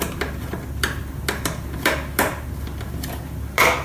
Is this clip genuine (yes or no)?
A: yes